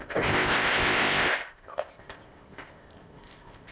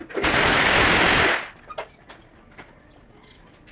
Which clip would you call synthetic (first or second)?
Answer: first